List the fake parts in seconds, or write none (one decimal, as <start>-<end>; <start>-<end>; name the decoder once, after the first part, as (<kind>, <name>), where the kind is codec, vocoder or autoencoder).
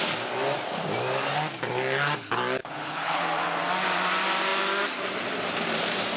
2.6-3.2 (codec, HILCodec)